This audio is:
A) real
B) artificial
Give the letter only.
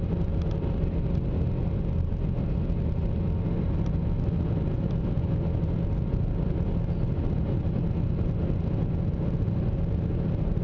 A